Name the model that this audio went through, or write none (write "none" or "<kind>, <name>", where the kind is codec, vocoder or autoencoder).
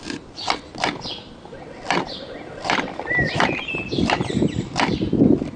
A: none